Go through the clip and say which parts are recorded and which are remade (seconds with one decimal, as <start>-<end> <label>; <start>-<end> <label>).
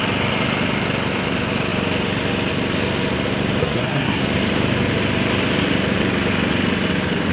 0.0-3.6 recorded; 3.6-4.2 remade; 4.2-7.3 recorded